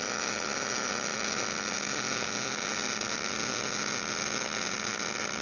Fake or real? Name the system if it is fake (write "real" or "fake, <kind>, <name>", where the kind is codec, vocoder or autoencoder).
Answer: real